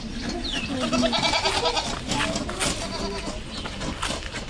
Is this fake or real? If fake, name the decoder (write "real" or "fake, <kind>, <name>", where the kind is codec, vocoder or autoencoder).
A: real